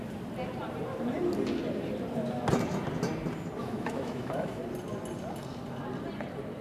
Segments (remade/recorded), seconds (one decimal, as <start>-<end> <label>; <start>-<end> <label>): 0.0-3.6 recorded; 3.6-4.6 remade; 4.6-6.6 recorded